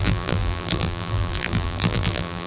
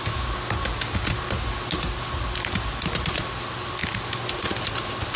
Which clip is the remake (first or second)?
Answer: first